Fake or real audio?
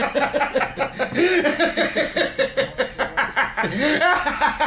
real